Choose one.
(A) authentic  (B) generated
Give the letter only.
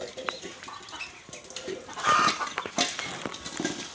A